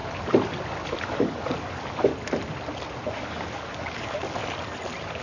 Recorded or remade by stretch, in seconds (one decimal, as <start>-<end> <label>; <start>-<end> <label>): 0.0-1.2 recorded; 1.2-2.1 remade; 2.1-3.1 recorded; 3.1-4.4 remade; 4.4-5.2 recorded